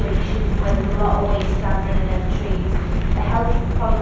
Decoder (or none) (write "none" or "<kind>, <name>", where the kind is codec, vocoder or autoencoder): none